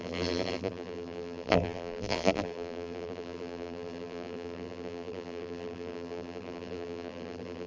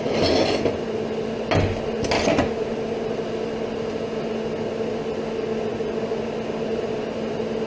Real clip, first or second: second